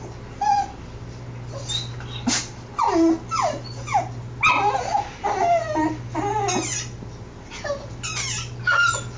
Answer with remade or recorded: recorded